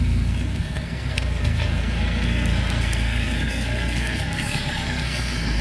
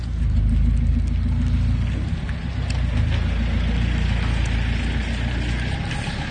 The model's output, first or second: first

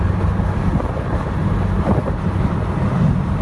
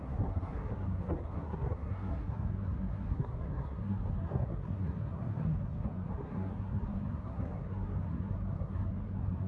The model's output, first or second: second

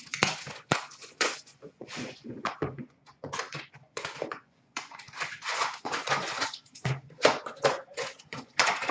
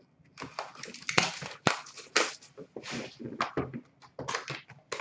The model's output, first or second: first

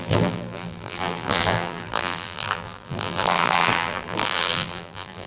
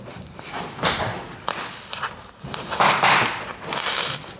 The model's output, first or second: first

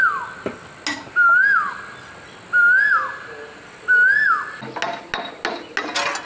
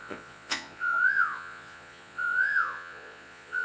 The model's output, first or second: second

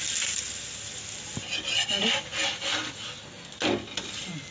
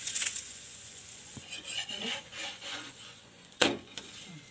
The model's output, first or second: second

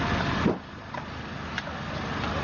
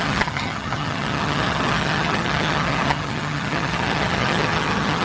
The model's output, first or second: second